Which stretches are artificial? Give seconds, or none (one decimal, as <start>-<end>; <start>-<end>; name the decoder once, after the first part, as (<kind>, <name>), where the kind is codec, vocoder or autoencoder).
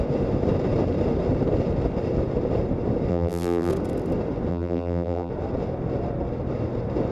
3.1-3.7 (vocoder, BigVGAN v2); 4.5-5.3